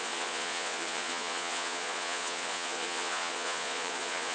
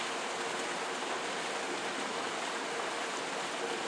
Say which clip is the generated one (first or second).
first